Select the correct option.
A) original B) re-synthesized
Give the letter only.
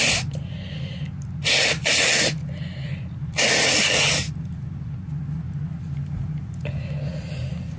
A